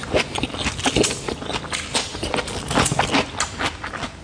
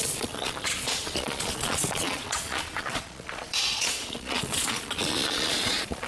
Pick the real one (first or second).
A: first